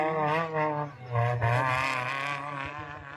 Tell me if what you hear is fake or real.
real